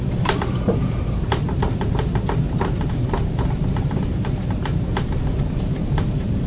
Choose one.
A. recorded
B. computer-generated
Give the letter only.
B